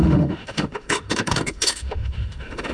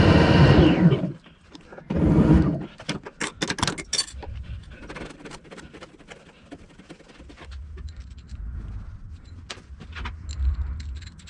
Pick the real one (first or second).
second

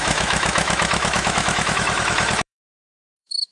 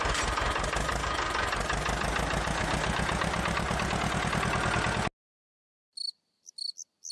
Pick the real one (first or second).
second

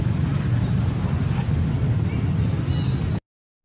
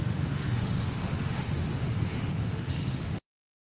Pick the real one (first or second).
first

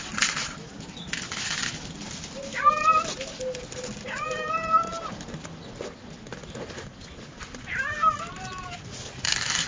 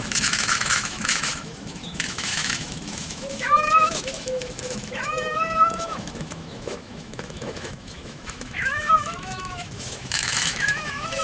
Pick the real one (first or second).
first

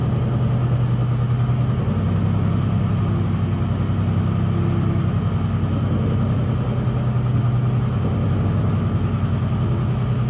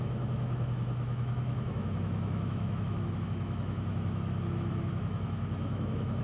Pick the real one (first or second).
first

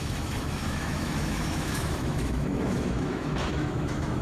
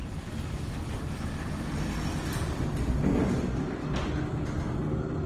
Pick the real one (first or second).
second